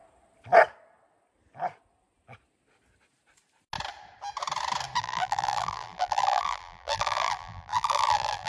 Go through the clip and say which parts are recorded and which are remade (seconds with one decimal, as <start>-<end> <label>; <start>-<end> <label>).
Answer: 0.0-5.0 recorded; 5.0-8.5 remade